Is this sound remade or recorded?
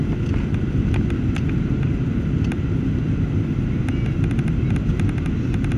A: recorded